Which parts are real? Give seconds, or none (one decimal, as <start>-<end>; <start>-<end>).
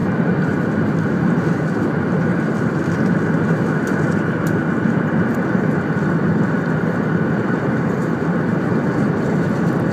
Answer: 0.0-1.0; 2.3-3.8